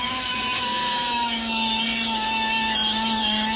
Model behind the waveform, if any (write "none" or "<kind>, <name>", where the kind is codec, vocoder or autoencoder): autoencoder, DAC-VAE